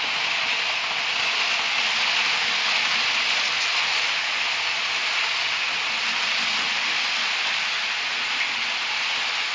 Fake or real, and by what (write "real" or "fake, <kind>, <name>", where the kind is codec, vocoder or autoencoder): real